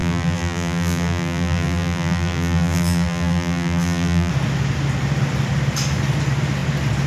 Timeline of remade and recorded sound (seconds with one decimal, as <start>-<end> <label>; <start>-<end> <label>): 0.0-4.3 remade; 4.3-7.1 recorded